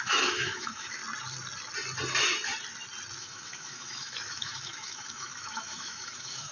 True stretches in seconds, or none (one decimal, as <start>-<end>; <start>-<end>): 1.0-3.2